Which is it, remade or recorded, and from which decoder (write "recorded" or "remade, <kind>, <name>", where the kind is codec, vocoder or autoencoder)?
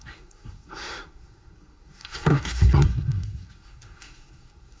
remade, codec, SNAC